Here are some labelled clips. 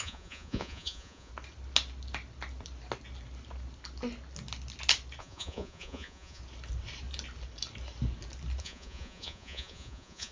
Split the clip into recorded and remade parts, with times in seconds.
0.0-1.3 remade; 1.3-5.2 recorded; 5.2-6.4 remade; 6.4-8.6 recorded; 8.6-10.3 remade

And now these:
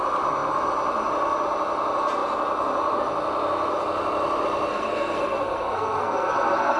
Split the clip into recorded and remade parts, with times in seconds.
0.0-4.7 recorded; 4.7-6.8 remade

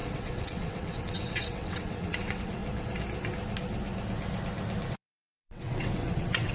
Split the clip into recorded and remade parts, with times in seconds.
0.0-2.6 remade; 2.6-4.9 recorded; 4.9-6.5 remade